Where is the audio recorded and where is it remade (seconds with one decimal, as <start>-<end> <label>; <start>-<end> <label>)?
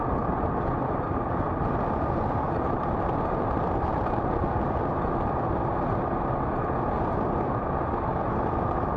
0.0-9.0 recorded